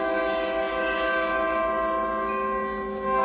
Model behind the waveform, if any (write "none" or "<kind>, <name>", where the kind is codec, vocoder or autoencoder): none